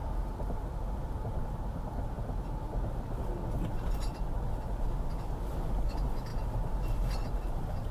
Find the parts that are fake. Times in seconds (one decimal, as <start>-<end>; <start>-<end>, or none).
0.0-3.2